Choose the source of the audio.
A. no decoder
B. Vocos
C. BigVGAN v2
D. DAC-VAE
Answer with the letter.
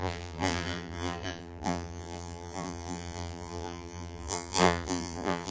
C